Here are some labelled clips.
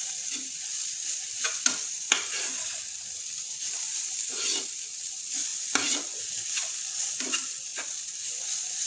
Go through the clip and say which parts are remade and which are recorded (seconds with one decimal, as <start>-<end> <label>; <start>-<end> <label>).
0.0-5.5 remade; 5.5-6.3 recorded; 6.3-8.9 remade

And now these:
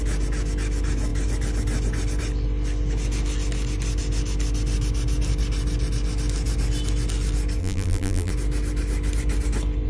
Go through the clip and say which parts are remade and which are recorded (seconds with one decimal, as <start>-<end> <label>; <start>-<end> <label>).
0.0-7.6 recorded; 7.6-8.3 remade; 8.3-9.9 recorded

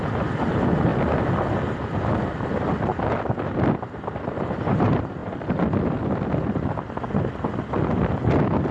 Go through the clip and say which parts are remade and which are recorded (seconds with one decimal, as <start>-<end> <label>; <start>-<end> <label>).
0.0-0.9 remade; 0.9-2.2 recorded; 2.2-2.9 remade; 2.9-3.7 recorded; 3.7-5.2 remade; 5.2-8.7 recorded